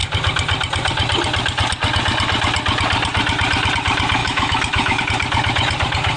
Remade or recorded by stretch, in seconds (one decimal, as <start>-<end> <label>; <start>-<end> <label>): 0.0-4.2 recorded; 4.2-5.0 remade; 5.0-6.2 recorded